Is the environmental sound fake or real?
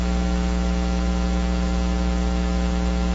fake